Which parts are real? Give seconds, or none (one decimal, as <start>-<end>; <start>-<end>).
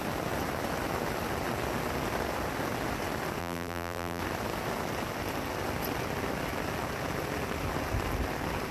0.0-3.4; 4.2-8.7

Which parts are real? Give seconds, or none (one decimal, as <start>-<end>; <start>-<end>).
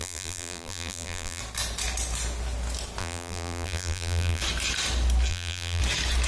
1.4-3.0; 4.4-5.3; 5.8-6.3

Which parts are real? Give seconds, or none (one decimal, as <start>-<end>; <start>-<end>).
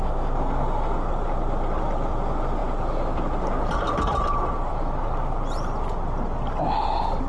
0.0-7.3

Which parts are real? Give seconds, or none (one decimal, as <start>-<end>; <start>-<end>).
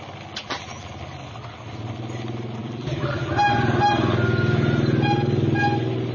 0.0-0.4; 0.9-2.6; 3.3-6.1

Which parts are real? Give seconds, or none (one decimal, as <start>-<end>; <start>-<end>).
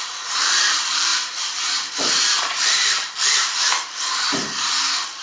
3.7-4.8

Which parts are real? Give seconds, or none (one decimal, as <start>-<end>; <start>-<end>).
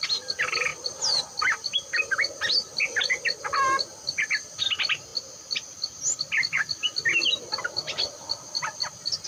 0.0-9.3